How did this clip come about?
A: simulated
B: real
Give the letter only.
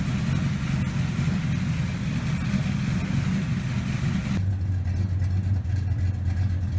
B